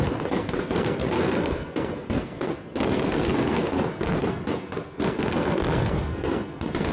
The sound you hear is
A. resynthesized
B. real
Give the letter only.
A